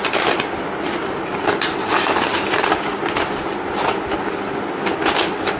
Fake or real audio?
real